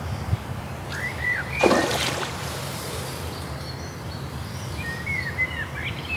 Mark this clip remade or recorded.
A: remade